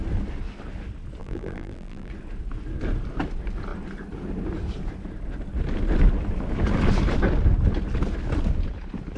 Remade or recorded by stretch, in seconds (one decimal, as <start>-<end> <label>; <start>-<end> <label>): 0.0-1.2 recorded; 1.2-2.1 remade; 2.1-9.2 recorded

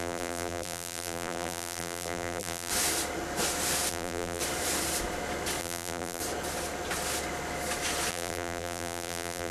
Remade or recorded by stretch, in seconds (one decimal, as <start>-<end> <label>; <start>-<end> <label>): 0.0-2.7 remade; 2.7-3.9 recorded; 3.9-4.4 remade; 4.4-5.6 recorded; 5.6-6.2 remade; 6.2-8.1 recorded; 8.1-9.5 remade

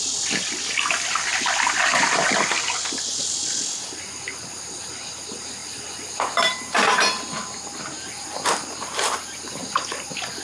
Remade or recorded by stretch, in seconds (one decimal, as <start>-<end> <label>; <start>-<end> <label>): 0.0-1.9 recorded; 1.9-4.9 remade; 4.9-5.6 recorded; 5.6-7.8 remade; 7.8-10.4 recorded

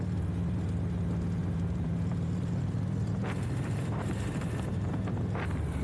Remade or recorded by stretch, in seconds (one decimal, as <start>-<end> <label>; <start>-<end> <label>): 0.0-1.4 recorded; 1.4-4.9 remade; 4.9-5.8 recorded

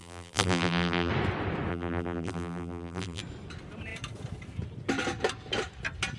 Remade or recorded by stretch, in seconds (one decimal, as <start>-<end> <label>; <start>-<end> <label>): 0.0-1.1 remade; 1.1-1.7 recorded; 1.7-3.2 remade; 3.2-6.2 recorded

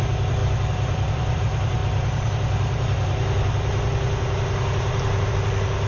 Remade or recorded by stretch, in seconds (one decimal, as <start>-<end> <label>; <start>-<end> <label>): 0.0-0.4 recorded; 0.4-1.4 remade; 1.4-5.9 recorded

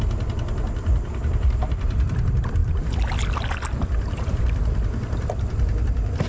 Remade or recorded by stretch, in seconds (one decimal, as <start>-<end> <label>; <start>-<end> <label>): 0.0-0.8 recorded; 0.8-2.2 remade; 2.2-6.3 recorded